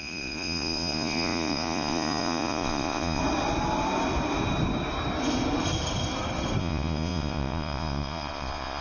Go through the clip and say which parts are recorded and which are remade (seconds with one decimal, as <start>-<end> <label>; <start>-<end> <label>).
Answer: 0.0-3.2 remade; 3.2-6.6 recorded; 6.6-8.8 remade